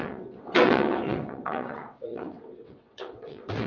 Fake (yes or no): yes